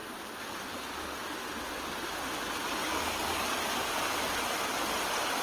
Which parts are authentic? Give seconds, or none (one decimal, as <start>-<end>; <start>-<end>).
0.0-2.8; 3.9-5.4